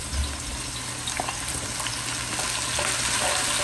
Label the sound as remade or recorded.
recorded